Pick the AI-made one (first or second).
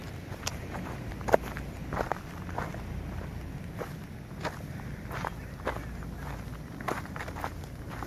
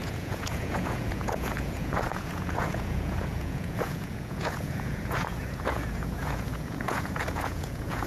second